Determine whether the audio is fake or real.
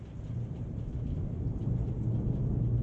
real